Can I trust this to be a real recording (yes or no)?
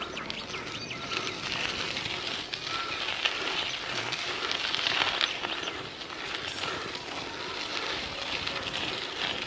yes